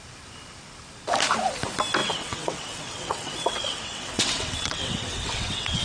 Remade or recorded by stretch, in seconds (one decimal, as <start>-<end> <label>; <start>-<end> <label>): 0.0-2.0 recorded; 2.0-5.8 remade